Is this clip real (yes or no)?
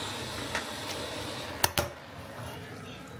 yes